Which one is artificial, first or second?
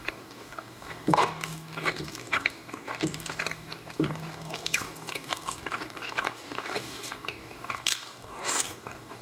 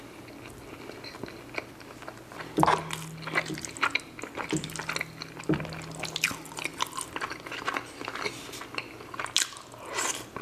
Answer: first